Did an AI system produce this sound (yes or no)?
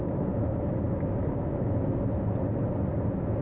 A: no